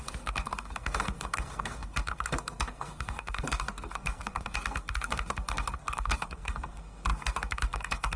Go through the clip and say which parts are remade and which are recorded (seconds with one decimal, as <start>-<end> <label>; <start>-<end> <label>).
0.0-8.2 remade

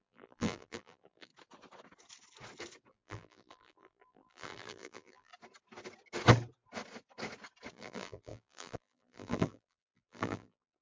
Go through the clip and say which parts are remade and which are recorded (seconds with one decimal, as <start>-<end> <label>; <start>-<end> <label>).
0.0-1.3 remade; 1.3-2.9 recorded; 2.9-5.3 remade; 5.3-7.7 recorded; 7.7-10.8 remade

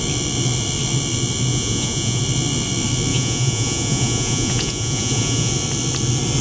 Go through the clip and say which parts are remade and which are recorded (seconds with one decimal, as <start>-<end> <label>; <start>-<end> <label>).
0.0-1.5 recorded; 1.5-2.2 remade; 2.2-3.1 recorded; 3.1-5.5 remade; 5.5-6.4 recorded

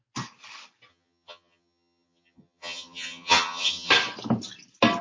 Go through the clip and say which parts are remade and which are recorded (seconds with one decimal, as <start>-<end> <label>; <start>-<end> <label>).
0.0-0.9 recorded; 0.9-3.9 remade; 3.9-5.0 recorded

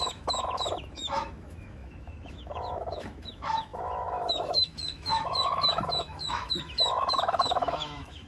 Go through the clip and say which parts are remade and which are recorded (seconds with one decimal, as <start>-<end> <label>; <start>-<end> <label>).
0.0-8.3 remade

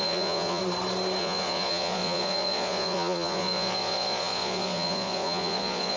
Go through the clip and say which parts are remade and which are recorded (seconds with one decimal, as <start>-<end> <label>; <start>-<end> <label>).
0.0-0.6 remade; 0.6-1.2 recorded; 1.2-6.0 remade